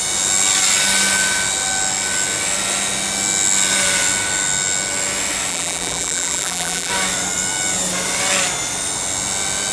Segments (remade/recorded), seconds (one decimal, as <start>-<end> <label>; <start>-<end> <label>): 0.0-5.5 recorded; 5.5-6.9 remade; 6.9-9.7 recorded